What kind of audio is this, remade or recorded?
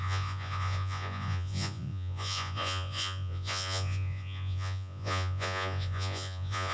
remade